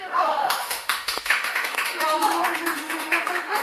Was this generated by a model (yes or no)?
yes